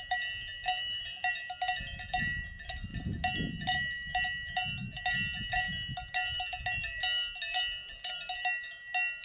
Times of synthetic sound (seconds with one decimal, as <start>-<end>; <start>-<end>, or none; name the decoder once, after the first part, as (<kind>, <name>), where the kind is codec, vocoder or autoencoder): none